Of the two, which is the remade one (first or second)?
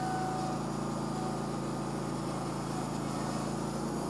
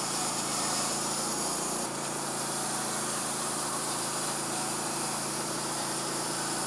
second